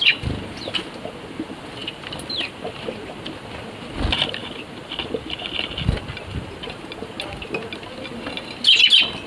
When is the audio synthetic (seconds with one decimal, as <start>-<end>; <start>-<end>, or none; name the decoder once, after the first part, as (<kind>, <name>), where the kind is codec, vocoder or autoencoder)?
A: none

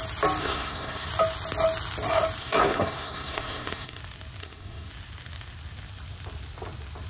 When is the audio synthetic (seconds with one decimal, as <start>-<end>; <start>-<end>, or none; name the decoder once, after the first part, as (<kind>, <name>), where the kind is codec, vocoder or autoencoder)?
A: 0.4-1.1 (codec, SNAC); 2.4-4.0; 4.4-4.9